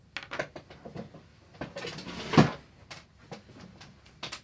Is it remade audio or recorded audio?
recorded